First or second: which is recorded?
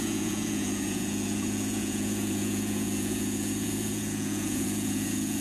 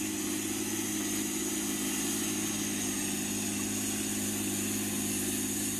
second